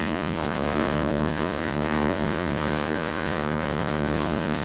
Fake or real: fake